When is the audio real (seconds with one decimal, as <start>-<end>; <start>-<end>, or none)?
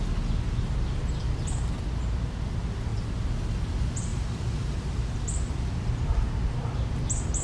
0.0-4.1; 6.0-7.4